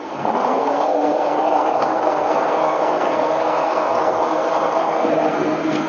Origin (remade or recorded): remade